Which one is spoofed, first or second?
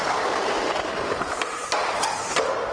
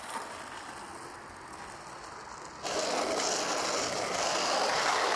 first